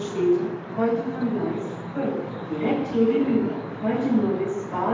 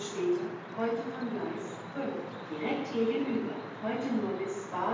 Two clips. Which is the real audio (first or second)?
second